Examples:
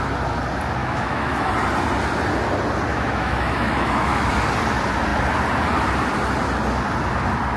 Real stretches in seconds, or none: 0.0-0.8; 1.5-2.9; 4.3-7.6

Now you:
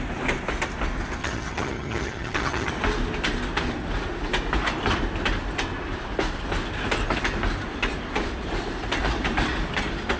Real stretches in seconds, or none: 0.0-1.2; 2.7-10.2

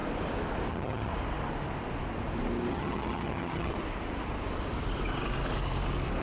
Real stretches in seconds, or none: 0.0-0.7; 1.1-2.7; 3.7-6.2